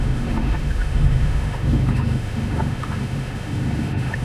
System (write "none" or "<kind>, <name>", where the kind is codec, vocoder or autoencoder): autoencoder, DAC-VAE